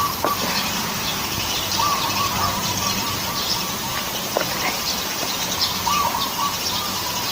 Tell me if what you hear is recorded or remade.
remade